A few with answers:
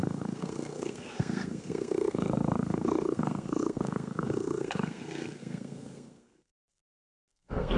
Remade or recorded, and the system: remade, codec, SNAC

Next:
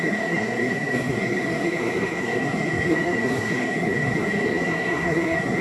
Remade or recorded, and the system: remade, codec, SNAC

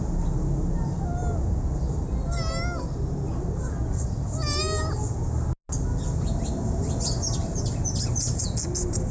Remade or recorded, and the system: recorded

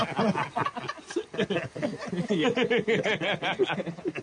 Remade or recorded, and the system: recorded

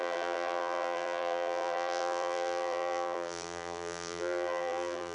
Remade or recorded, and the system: remade, vocoder, BigVGAN v2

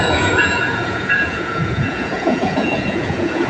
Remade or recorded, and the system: remade, vocoder, Vocos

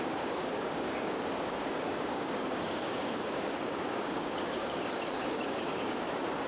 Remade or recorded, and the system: remade, codec, DAC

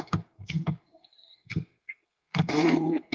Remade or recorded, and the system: remade, codec, SNAC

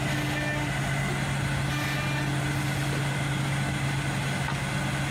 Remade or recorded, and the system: recorded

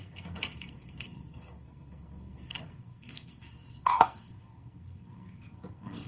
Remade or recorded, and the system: remade, codec, SNAC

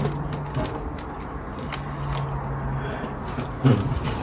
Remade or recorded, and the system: recorded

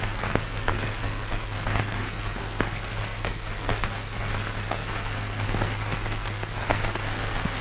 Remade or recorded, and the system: remade, codec, SNAC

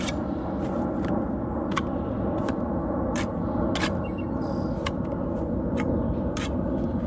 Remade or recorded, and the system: recorded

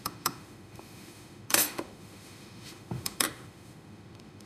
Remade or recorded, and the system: remade, autoencoder, DAC-VAE